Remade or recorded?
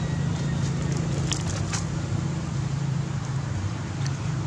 recorded